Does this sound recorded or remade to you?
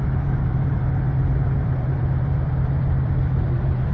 remade